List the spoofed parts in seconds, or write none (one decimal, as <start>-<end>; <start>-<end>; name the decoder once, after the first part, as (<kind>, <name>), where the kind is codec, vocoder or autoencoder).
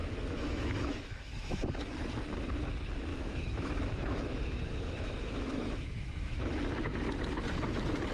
0.0-1.6 (autoencoder, DAC-VAE); 3.1-6.4